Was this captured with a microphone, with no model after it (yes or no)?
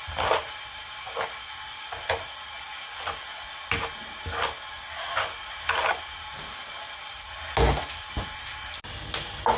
yes